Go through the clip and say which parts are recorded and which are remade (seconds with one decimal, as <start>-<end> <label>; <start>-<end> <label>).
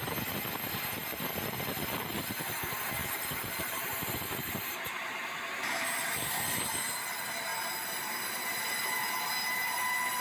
0.0-3.0 recorded; 3.0-6.0 remade; 6.0-10.2 recorded